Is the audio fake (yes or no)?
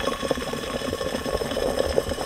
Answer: yes